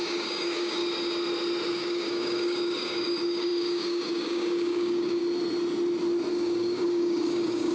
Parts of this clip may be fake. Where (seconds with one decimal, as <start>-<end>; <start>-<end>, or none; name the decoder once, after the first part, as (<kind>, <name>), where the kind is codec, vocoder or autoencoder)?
0.0-0.8 (codec, DAC); 1.7-5.2; 6.3-7.7